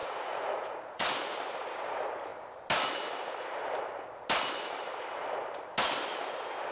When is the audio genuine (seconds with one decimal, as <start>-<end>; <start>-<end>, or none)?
1.1-6.7